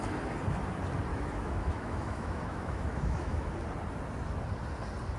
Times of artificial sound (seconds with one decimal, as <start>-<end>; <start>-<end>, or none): 1.1-3.5